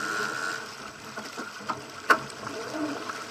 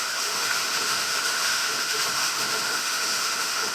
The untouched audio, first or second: first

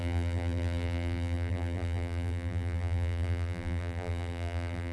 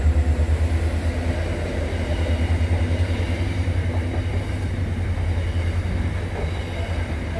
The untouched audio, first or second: second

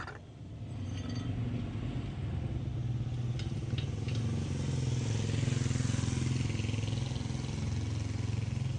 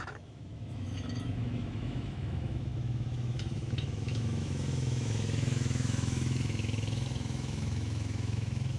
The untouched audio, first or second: first